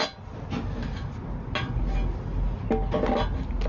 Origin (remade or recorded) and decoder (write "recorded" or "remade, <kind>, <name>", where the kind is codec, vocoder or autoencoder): recorded